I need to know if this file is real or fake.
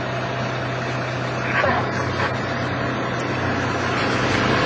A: real